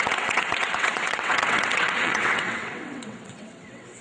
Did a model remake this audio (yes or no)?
yes